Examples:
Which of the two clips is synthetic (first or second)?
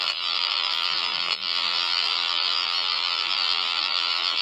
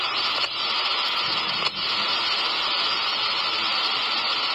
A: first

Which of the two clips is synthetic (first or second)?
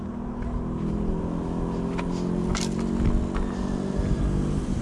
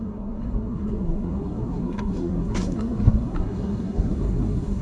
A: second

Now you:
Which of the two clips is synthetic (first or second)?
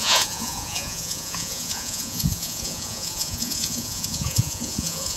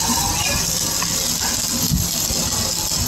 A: first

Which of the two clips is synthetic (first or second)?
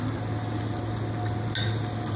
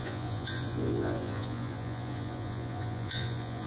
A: second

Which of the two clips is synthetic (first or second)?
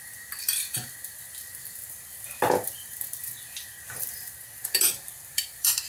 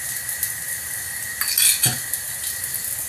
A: first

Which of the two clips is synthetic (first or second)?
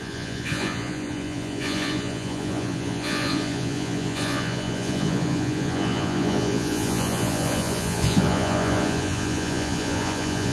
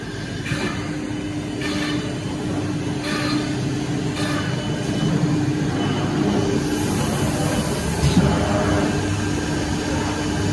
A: first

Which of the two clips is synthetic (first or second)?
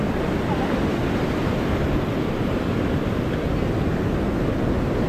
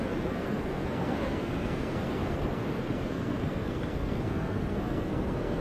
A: second